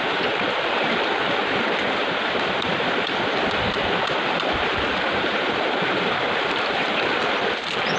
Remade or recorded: remade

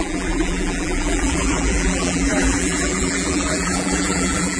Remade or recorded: remade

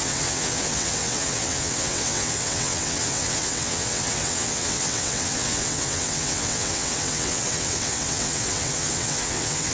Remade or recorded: remade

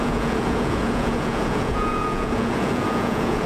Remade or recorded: remade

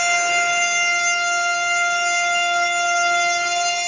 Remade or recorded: recorded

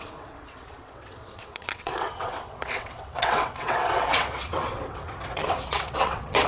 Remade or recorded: remade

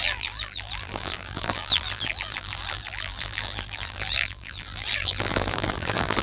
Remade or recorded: remade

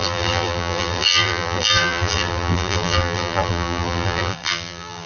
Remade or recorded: remade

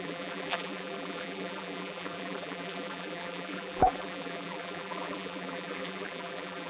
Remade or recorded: remade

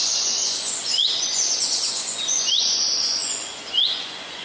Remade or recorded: remade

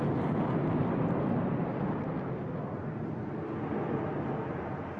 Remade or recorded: recorded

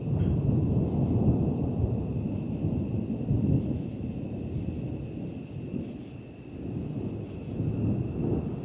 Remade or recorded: recorded